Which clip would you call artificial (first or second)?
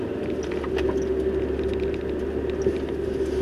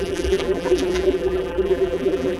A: second